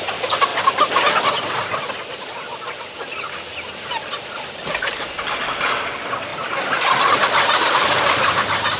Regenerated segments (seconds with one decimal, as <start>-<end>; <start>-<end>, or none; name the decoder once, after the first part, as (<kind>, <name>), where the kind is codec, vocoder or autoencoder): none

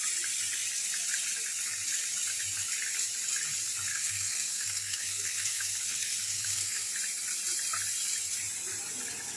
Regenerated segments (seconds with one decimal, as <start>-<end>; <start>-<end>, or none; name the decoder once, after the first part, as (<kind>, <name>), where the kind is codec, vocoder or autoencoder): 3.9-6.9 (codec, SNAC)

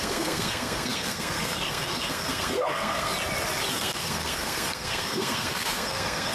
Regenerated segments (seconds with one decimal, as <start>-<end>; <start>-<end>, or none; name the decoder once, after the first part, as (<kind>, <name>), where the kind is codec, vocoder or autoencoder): 0.0-3.1 (codec, SNAC); 3.7-6.3